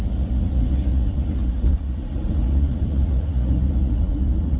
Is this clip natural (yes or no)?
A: no